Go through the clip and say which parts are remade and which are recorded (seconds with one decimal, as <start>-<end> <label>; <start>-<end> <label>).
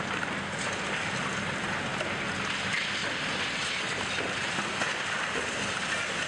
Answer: 0.0-6.3 recorded